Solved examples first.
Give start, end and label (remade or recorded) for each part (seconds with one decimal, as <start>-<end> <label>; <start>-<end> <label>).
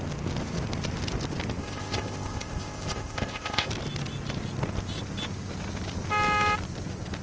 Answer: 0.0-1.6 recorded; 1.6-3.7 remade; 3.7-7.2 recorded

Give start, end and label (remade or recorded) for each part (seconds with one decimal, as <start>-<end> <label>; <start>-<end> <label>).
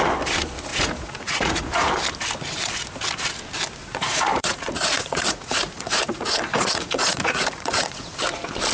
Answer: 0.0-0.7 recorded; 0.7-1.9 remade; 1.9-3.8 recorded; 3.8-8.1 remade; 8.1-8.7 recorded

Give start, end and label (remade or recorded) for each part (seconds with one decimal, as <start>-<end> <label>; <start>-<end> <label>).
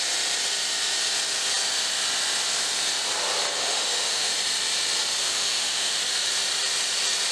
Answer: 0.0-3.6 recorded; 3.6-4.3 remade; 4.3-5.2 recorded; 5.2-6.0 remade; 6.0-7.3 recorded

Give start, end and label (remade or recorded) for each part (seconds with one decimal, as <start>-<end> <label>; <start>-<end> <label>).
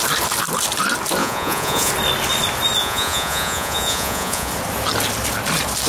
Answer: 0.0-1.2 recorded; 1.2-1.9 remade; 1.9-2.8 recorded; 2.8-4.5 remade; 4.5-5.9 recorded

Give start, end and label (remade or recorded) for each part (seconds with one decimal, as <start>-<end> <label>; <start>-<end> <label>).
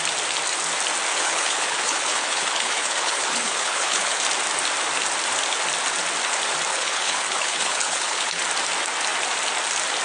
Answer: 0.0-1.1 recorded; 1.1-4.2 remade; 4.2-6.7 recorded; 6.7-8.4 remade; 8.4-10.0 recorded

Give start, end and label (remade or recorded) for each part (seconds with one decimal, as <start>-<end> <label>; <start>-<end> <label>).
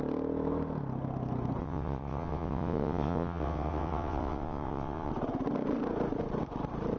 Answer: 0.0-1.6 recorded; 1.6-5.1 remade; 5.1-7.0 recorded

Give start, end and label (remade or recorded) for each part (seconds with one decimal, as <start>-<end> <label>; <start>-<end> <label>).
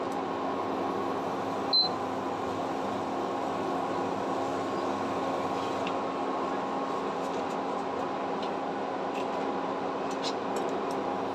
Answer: 0.0-11.3 recorded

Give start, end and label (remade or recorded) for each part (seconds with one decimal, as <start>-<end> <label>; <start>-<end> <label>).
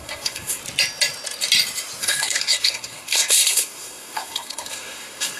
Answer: 0.0-0.6 remade; 0.6-2.0 recorded; 2.0-5.4 remade